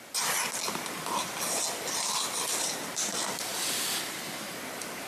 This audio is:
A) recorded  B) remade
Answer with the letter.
A